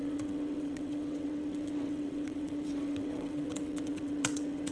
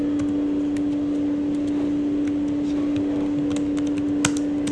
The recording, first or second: second